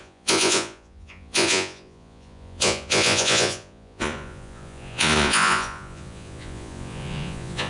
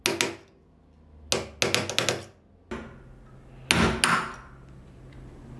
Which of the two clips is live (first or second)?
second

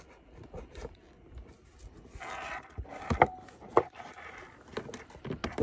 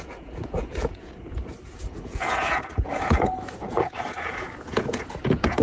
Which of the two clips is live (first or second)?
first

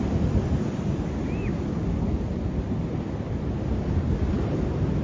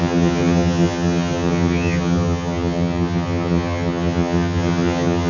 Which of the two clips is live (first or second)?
first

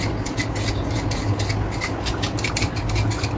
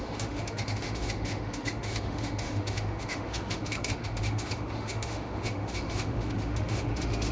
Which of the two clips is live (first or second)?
first